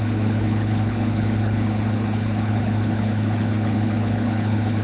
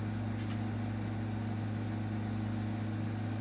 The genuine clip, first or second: second